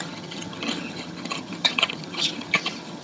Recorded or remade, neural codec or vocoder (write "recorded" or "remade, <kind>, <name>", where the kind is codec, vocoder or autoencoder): remade, vocoder, HiFi-GAN